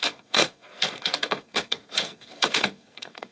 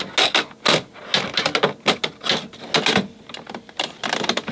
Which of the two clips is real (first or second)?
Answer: second